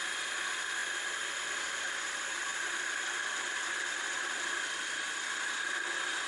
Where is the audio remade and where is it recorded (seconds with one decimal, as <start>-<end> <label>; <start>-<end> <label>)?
0.0-6.3 recorded